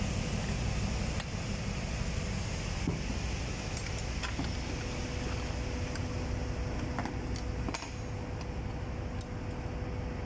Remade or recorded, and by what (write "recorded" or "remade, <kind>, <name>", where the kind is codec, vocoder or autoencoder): recorded